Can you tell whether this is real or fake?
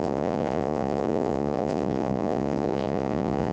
fake